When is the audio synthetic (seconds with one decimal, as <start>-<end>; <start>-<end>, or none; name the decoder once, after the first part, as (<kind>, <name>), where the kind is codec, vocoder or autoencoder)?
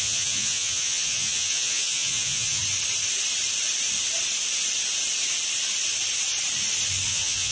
0.0-2.6 (vocoder, Vocos); 7.1-7.5